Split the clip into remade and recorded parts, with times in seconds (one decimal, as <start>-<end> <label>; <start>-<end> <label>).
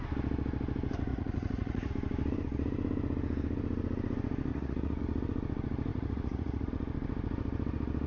0.0-1.1 recorded; 1.1-1.9 remade; 1.9-4.5 recorded; 4.5-5.0 remade; 5.0-5.9 recorded; 5.9-6.7 remade; 6.7-8.1 recorded